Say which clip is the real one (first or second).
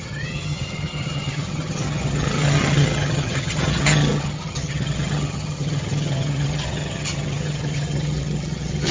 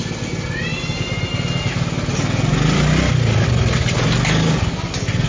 second